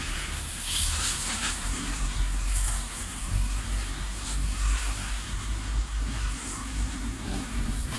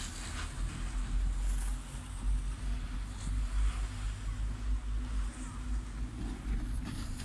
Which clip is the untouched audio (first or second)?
second